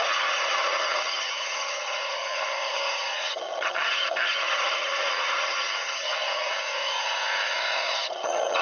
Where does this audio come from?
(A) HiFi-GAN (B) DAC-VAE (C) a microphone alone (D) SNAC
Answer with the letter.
A